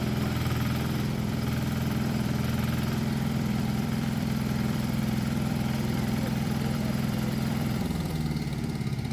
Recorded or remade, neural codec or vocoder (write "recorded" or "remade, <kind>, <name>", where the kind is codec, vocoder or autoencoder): remade, vocoder, BigVGAN v2